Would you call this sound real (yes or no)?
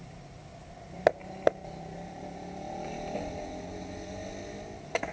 yes